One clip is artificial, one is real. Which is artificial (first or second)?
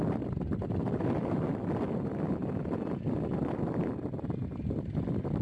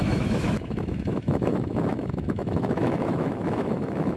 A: second